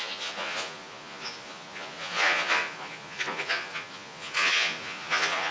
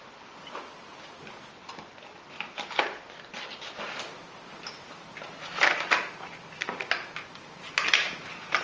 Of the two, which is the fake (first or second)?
first